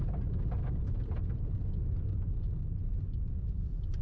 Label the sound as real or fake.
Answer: real